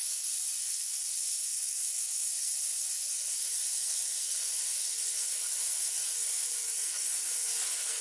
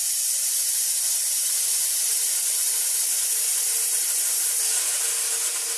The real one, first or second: second